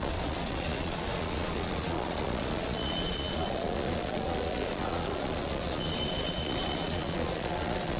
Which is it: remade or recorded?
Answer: remade